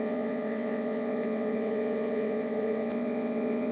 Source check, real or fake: fake